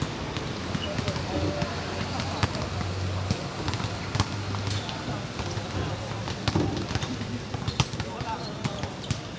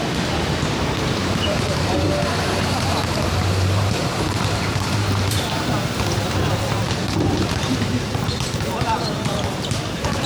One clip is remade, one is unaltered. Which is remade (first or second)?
second